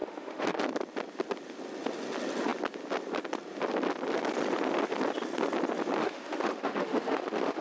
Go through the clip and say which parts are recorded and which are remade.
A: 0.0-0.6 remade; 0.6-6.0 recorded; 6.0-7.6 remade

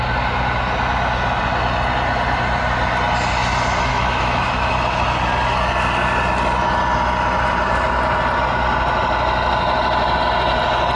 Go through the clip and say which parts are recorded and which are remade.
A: 0.0-3.9 recorded; 3.9-4.7 remade; 4.7-11.0 recorded

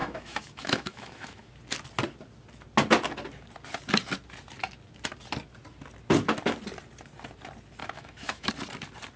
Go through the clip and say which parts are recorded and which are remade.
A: 0.0-1.5 remade; 1.5-7.8 recorded; 7.8-8.5 remade; 8.5-9.2 recorded

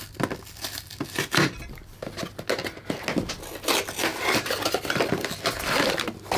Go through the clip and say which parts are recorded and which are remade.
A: 0.0-6.4 recorded

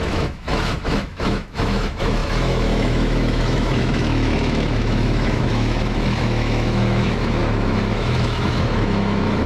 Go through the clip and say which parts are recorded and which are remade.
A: 0.0-9.5 remade

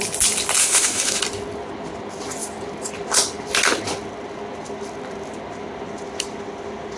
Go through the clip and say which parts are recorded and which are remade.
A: 0.0-0.6 recorded; 0.6-1.2 remade; 1.2-7.0 recorded

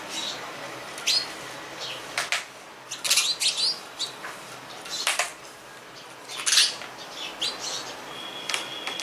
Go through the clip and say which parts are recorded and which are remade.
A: 0.0-9.0 recorded

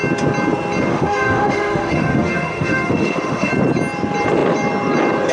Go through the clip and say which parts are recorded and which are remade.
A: 0.0-0.9 recorded; 0.9-3.5 remade; 3.5-5.3 recorded